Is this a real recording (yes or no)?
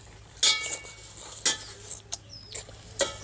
yes